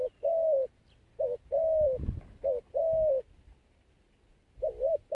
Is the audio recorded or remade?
recorded